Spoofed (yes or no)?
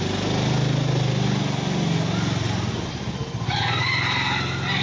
no